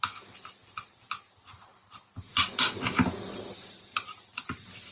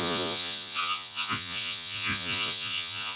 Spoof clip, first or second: second